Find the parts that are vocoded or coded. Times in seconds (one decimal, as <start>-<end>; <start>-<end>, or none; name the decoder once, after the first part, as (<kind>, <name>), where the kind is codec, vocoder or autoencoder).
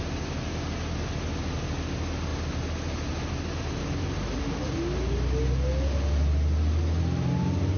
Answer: none